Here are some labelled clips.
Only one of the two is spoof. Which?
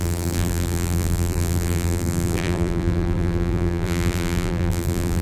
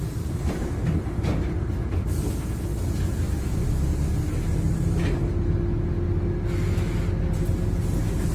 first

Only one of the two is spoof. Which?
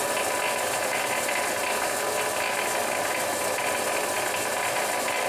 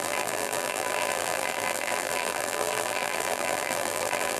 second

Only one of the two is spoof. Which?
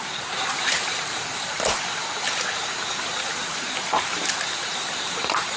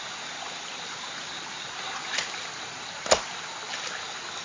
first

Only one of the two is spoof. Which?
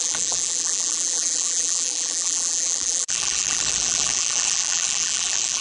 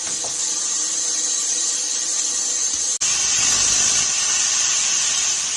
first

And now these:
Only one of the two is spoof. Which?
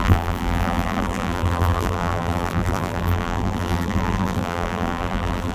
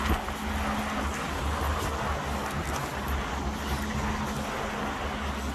first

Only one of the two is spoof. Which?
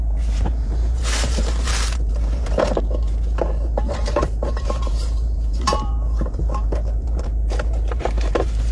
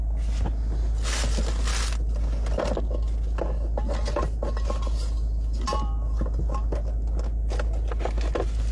first